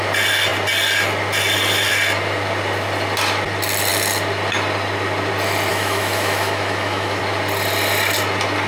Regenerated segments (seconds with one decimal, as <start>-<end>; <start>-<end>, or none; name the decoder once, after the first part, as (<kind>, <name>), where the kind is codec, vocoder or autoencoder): 5.7-7.2 (autoencoder, DAC-VAE)